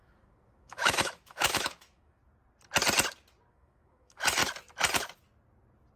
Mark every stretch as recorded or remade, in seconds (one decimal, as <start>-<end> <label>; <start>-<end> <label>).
0.0-2.2 remade; 2.2-3.5 recorded; 3.5-4.4 remade; 4.4-6.0 recorded